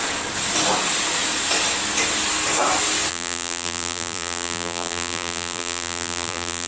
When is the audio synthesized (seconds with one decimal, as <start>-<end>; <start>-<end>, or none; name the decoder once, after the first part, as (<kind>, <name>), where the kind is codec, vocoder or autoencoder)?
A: 3.1-6.7 (vocoder, BigVGAN v2)